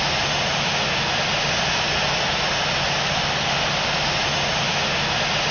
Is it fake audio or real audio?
real